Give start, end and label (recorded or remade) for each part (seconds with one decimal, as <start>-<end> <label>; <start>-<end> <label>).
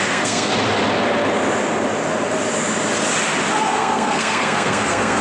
0.0-0.5 remade; 0.5-3.6 recorded; 3.6-5.2 remade